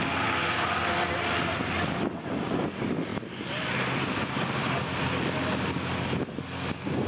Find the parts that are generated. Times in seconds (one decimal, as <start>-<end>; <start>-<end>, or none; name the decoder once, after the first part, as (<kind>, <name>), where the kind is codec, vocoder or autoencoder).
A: 3.1-5.4 (vocoder, BigVGAN v2)